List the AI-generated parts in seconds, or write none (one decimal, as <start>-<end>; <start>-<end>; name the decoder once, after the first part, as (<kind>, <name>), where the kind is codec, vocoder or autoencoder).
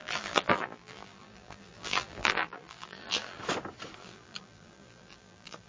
0.0-3.4 (vocoder, BigVGAN v2); 4.0-5.7